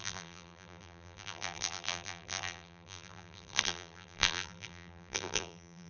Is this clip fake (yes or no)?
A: yes